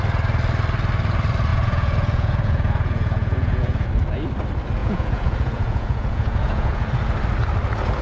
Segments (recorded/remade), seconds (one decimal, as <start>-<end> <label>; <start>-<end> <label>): 0.0-1.5 recorded; 1.5-3.9 remade; 3.9-4.8 recorded; 4.8-6.9 remade; 6.9-8.0 recorded